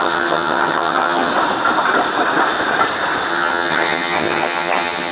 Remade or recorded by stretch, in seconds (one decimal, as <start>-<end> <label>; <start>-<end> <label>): 0.0-1.3 remade; 1.3-3.3 recorded; 3.3-5.1 remade